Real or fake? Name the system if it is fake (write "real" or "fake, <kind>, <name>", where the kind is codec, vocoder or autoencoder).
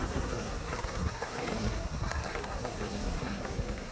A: fake, codec, SNAC